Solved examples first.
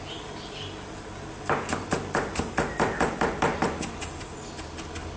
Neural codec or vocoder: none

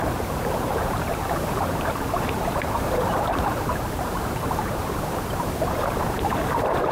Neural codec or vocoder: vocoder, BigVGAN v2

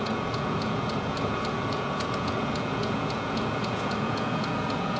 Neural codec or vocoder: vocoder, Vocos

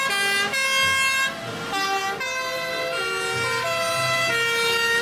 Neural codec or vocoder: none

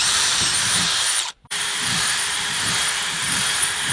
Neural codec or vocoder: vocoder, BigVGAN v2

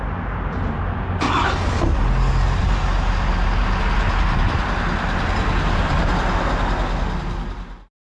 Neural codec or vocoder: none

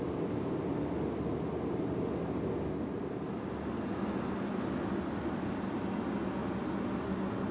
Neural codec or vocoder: none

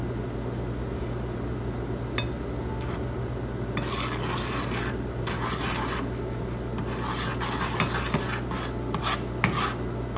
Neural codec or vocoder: none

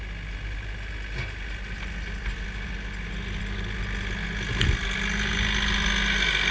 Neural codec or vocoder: none